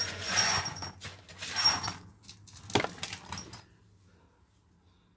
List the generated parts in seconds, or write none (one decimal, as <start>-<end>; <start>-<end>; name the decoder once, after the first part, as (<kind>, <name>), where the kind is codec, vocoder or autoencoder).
0.0-0.8 (vocoder, Vocos); 1.7-2.1